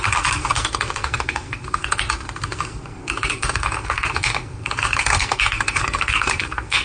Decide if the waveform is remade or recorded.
remade